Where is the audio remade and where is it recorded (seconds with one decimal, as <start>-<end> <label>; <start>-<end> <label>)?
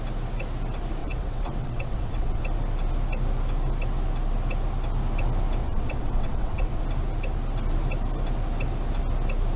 0.0-1.0 recorded; 1.0-2.4 remade; 2.4-5.6 recorded; 5.6-6.8 remade; 6.8-9.6 recorded